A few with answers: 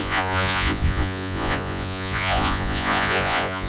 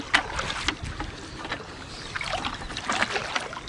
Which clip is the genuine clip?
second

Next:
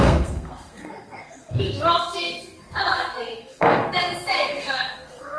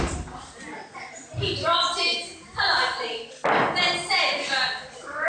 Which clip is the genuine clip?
second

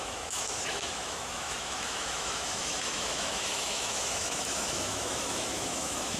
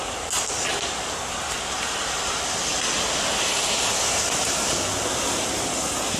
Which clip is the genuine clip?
second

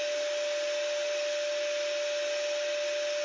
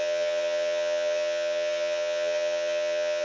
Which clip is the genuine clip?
first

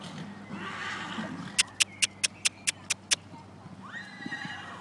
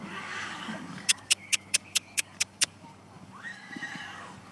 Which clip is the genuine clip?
first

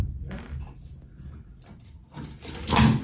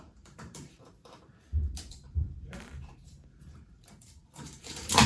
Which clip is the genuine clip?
first